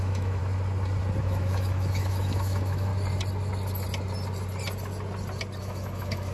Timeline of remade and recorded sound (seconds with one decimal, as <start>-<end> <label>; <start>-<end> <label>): 0.0-0.4 remade; 0.4-1.2 recorded; 1.2-2.9 remade; 2.9-5.6 recorded; 5.6-6.3 remade